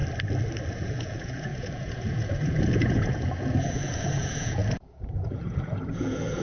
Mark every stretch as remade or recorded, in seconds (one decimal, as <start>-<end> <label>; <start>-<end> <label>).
0.0-0.7 recorded; 0.7-6.4 remade